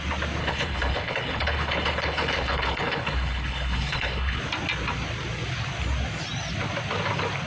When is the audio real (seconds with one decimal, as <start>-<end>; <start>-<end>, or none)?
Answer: 0.0-0.4; 4.4-7.5